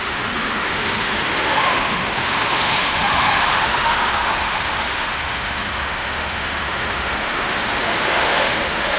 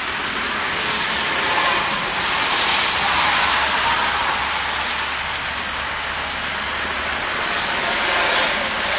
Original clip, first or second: second